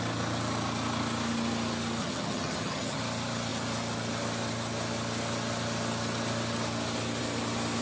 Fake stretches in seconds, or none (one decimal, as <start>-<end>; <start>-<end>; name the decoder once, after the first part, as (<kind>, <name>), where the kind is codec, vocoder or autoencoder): 2.0-3.0 (vocoder, HiFi-GAN)